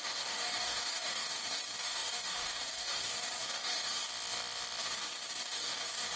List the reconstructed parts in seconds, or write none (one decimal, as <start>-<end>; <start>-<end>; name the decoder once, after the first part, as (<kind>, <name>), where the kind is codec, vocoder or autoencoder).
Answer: 0.0-4.1 (codec, DAC); 4.8-6.2